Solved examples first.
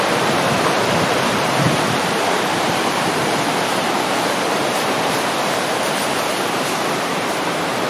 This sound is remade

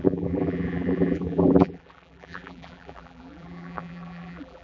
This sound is remade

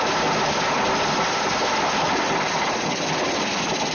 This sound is remade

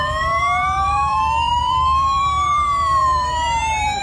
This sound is remade